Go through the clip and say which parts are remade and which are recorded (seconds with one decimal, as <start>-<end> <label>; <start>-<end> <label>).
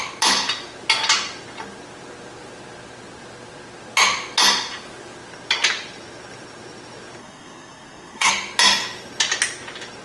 0.0-7.2 recorded; 7.2-8.3 remade; 8.3-10.0 recorded